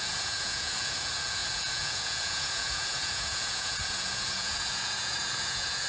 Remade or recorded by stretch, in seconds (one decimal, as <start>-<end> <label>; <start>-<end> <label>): 0.0-5.9 remade